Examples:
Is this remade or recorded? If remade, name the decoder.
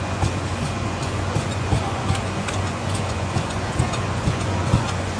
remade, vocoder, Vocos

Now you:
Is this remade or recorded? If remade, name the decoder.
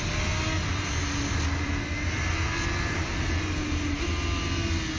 recorded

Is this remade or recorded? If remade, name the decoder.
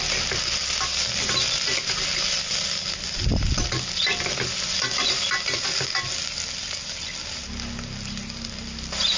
recorded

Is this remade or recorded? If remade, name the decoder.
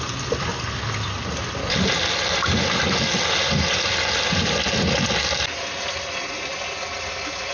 recorded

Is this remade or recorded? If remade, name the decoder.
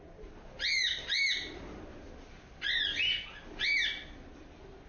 recorded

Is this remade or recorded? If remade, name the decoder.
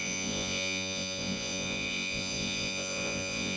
remade, vocoder, Vocos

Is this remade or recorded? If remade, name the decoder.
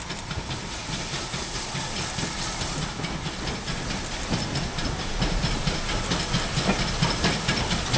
recorded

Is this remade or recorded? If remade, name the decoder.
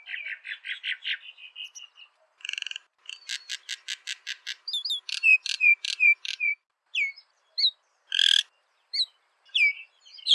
recorded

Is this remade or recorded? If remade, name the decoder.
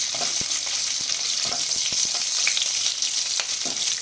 recorded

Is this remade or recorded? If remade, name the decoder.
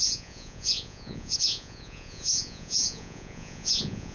remade, vocoder, Vocos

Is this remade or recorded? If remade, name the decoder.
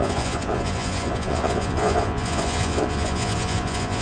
remade, vocoder, Vocos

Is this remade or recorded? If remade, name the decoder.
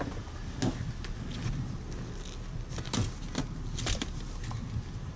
recorded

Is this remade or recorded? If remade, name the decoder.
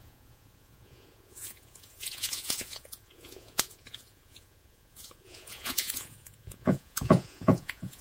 remade, vocoder, Vocos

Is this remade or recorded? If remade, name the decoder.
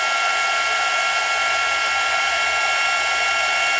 recorded